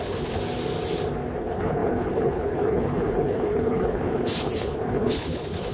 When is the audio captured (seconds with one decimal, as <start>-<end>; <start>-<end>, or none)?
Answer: 0.4-1.4